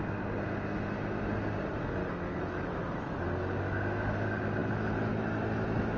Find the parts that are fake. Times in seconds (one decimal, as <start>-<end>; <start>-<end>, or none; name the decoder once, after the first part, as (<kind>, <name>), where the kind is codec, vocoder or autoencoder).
2.0-3.2 (autoencoder, DAC-VAE)